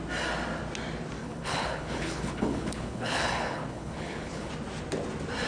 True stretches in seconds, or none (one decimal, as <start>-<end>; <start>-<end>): 0.0-1.2; 4.5-5.5